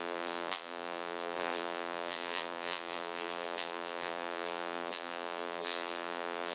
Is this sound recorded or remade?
remade